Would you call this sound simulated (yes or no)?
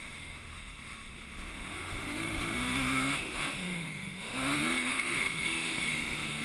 yes